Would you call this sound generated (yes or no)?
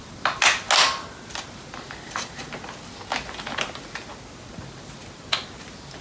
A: no